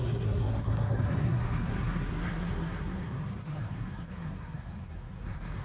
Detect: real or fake fake